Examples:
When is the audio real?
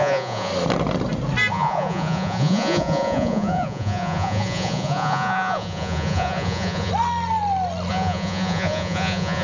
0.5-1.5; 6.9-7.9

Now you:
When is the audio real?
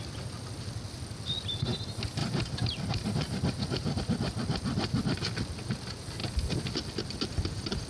0.0-2.2; 4.0-7.9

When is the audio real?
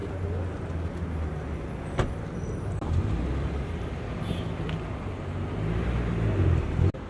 0.0-7.1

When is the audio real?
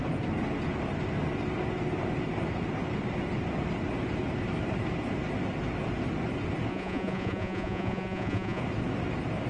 0.0-6.7; 8.6-9.5